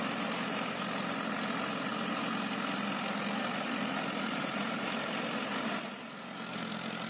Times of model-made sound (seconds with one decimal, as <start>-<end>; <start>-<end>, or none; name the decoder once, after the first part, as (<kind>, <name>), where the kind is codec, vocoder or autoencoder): none